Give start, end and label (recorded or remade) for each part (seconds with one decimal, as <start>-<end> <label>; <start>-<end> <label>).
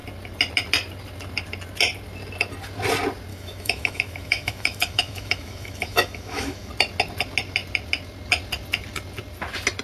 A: 0.0-3.3 recorded; 3.3-6.7 remade; 6.7-9.8 recorded